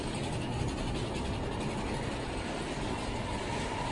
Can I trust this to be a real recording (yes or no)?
yes